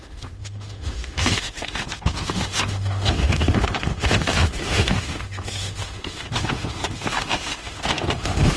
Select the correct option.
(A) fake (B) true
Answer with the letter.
A